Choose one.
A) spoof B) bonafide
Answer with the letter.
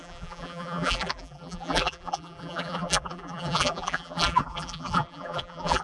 A